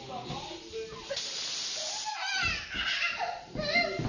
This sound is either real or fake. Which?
real